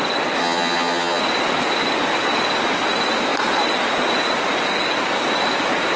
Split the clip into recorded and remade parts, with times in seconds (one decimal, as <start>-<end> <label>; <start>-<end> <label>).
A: 0.0-0.4 recorded; 0.4-1.2 remade; 1.2-6.0 recorded